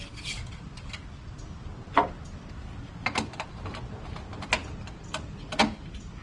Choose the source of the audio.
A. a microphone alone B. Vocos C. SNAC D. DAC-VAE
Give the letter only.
A